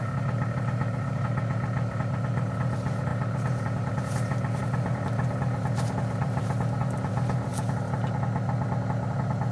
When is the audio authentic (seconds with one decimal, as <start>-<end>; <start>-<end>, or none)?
7.5-9.5